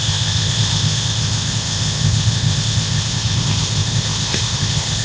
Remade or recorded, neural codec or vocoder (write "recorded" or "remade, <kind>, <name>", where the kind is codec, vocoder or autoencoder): remade, codec, ZipCodec